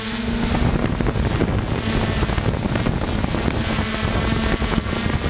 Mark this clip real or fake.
real